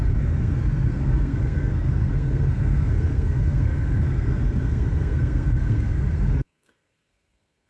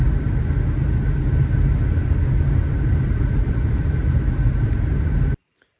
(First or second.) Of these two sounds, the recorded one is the second